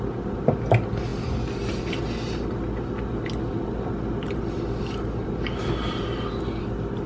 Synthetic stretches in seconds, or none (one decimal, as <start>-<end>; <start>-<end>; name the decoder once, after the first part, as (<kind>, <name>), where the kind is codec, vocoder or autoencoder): none